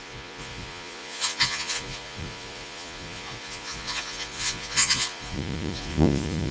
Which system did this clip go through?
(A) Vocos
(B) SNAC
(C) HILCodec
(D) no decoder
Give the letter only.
A